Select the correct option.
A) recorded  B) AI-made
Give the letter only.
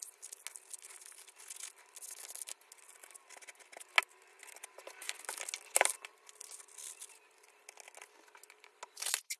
A